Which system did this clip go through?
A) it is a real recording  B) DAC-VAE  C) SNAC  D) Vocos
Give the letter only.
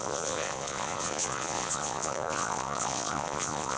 D